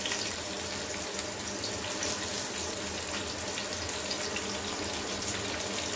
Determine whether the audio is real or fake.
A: real